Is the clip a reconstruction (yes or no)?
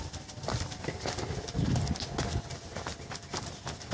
no